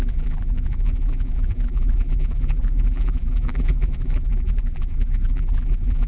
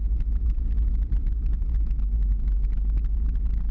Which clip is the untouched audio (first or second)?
second